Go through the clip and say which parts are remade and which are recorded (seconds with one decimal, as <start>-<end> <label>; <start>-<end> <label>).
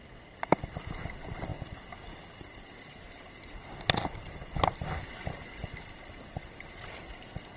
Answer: 0.0-7.6 recorded